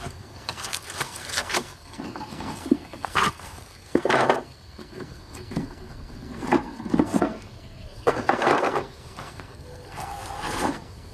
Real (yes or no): no